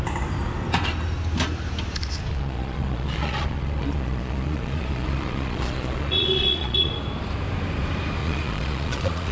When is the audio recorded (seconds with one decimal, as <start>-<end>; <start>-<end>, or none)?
0.0-2.3; 6.9-8.2